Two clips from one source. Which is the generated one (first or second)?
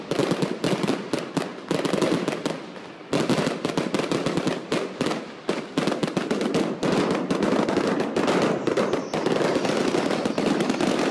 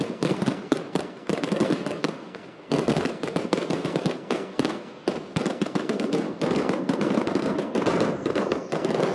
second